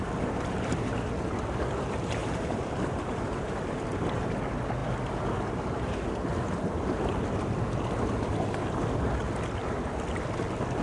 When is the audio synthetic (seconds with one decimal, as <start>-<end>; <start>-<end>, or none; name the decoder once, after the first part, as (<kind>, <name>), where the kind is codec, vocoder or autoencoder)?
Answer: 2.2-3.8 (vocoder, BigVGAN v2); 9.6-10.2